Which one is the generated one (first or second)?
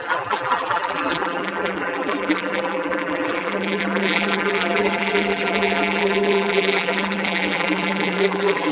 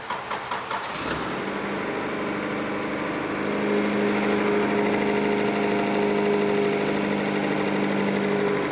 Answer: first